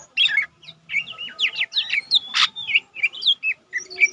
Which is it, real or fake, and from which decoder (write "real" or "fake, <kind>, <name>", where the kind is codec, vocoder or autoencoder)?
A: fake, vocoder, BigVGAN v2